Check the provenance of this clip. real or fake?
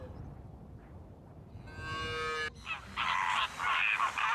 real